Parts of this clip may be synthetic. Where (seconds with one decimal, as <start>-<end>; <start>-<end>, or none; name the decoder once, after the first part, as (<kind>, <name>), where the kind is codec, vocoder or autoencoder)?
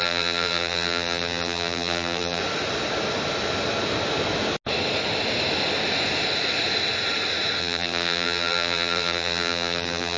0.0-2.4 (vocoder, BigVGAN v2); 7.6-10.2